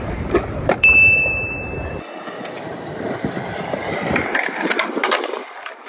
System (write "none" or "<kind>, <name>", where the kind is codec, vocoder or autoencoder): vocoder, BigVGAN v2